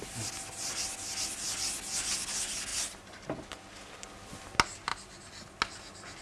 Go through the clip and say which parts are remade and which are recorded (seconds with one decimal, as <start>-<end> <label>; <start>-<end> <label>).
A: 0.0-6.2 recorded